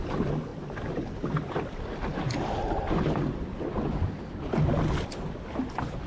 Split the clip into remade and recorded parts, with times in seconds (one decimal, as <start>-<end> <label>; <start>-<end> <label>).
0.0-6.1 recorded